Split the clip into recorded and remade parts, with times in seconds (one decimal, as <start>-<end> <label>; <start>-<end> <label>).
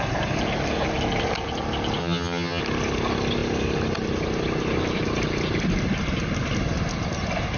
0.0-2.0 recorded; 2.0-2.6 remade; 2.6-7.6 recorded